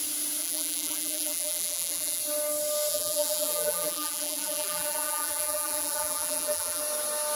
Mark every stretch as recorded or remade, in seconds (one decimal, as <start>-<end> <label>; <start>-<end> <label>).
0.0-0.4 recorded; 0.4-2.2 remade; 2.2-2.9 recorded; 2.9-6.8 remade; 6.8-7.4 recorded

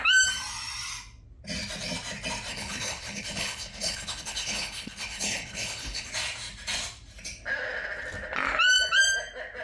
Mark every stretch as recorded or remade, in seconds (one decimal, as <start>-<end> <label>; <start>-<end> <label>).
0.0-2.5 recorded; 2.5-6.1 remade; 6.1-9.6 recorded

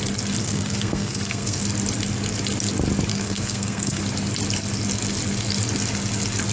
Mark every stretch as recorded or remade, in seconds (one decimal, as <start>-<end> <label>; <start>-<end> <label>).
0.0-0.4 recorded; 0.4-1.6 remade; 1.6-3.1 recorded; 3.1-4.0 remade; 4.0-6.5 recorded

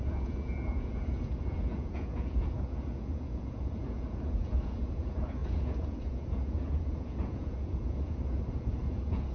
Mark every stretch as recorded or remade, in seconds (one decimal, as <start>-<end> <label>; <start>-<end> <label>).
0.0-9.3 remade

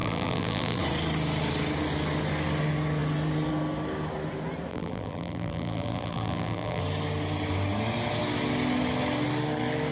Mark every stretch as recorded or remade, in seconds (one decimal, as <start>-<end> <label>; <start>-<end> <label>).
0.0-0.8 remade; 0.8-4.7 recorded; 4.7-6.8 remade; 6.8-9.9 recorded